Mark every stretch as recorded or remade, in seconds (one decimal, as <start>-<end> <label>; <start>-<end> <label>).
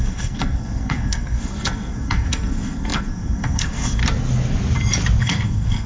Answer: 0.0-4.0 remade; 4.0-5.2 recorded; 5.2-5.9 remade